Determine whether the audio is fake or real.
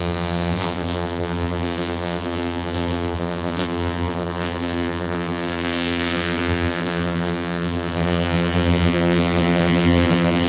fake